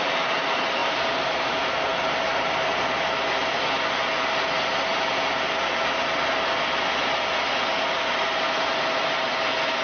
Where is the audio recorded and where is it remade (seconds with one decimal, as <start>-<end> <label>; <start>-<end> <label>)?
0.0-0.8 recorded; 0.8-2.8 remade; 2.8-9.8 recorded